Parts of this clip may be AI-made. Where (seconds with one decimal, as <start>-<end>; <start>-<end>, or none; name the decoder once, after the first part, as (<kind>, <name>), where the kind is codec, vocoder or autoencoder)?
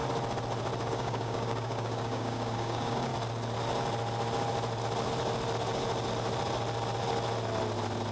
0.9-3.1 (codec, DAC)